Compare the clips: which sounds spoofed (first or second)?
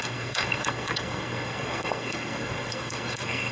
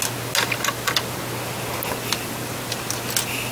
first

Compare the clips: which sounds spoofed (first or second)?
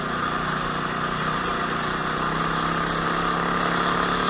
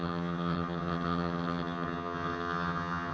second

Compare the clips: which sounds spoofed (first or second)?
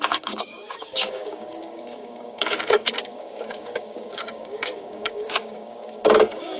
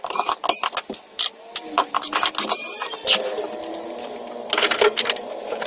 first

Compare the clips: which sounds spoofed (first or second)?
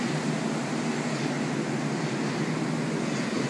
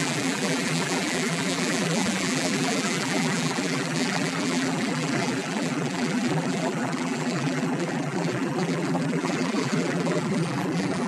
second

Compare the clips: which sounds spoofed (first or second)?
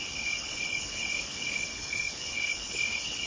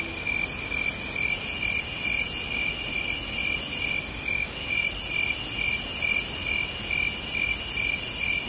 first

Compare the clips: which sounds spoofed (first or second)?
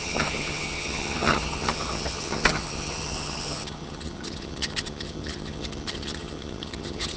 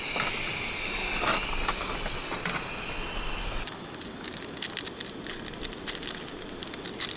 first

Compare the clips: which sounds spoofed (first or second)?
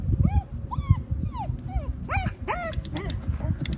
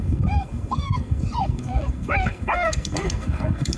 second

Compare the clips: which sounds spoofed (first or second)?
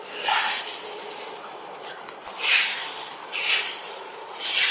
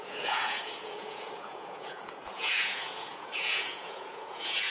second